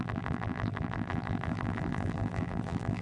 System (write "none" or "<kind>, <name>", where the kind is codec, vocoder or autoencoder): vocoder, BigVGAN v2